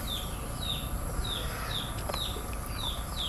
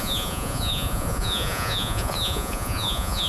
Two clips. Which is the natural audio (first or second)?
first